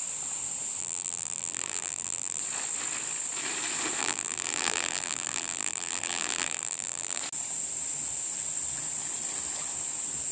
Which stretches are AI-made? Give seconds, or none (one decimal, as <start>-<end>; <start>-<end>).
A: 0.8-2.4; 4.0-7.2

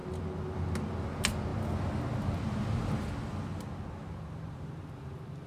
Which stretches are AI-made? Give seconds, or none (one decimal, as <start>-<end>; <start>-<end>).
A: none